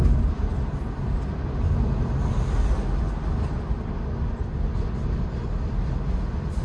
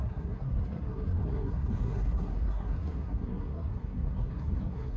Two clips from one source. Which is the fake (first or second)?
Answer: second